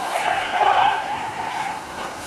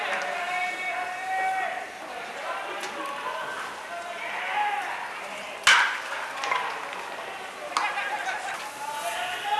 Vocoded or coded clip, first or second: first